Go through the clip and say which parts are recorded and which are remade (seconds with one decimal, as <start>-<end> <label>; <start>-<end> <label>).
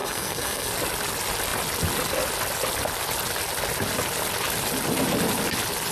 0.0-0.7 remade; 0.7-5.9 recorded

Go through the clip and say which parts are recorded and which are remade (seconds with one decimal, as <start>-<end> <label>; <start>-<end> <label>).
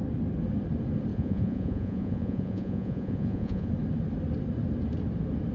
0.0-1.1 recorded; 1.1-3.7 remade; 3.7-5.5 recorded